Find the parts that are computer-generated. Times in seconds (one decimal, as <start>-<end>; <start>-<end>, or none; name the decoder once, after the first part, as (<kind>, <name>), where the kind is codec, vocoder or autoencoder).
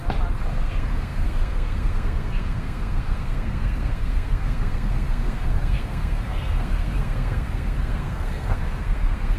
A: 0.5-9.4 (codec, SNAC)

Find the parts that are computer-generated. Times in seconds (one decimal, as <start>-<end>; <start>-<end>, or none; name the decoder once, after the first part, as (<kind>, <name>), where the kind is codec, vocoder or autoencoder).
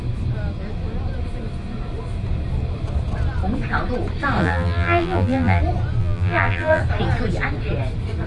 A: 4.4-5.6 (vocoder, BigVGAN v2); 6.0-6.8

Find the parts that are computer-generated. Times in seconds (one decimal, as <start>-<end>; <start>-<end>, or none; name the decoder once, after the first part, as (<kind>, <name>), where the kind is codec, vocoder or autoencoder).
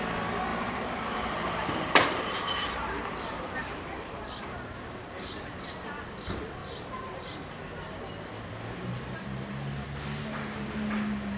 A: 0.5-5.7 (vocoder, BigVGAN v2); 6.6-8.0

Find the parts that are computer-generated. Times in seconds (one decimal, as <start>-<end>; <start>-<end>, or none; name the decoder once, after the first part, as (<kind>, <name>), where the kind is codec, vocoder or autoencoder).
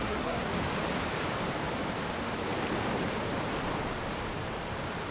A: 0.0-0.5 (codec, SNAC)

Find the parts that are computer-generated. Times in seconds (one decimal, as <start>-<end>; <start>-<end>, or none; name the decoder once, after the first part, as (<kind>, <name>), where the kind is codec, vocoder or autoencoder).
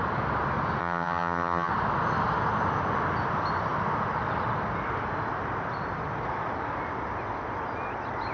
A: 0.8-1.7 (vocoder, HiFi-GAN)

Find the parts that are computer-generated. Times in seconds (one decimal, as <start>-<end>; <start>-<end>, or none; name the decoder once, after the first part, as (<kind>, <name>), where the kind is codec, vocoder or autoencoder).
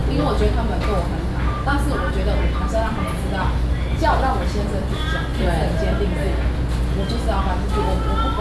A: none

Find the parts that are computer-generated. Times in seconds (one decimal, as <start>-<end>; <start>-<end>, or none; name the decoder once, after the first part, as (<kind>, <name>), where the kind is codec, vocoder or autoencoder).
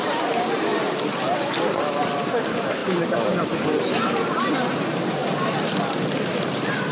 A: 2.8-4.4 (vocoder, BigVGAN v2)